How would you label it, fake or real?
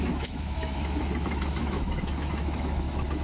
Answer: fake